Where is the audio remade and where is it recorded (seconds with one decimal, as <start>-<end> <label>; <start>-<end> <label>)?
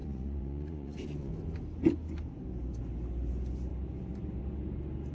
0.0-1.3 remade; 1.3-5.1 recorded